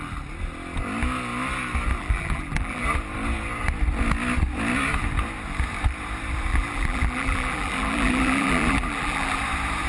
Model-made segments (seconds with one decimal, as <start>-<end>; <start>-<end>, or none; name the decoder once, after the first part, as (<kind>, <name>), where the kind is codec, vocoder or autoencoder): 2.0-2.8 (vocoder, BigVGAN v2); 6.5-9.4